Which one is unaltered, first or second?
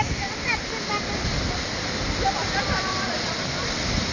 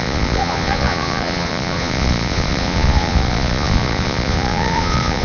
first